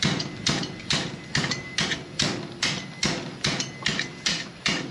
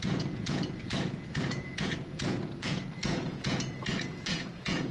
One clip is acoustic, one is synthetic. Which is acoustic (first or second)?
first